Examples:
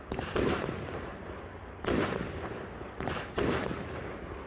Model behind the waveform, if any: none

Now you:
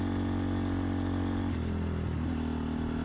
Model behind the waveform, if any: none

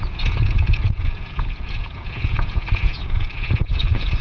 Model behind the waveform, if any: vocoder, Vocos